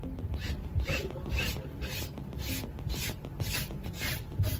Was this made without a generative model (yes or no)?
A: yes